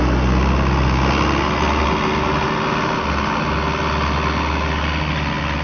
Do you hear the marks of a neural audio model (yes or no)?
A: no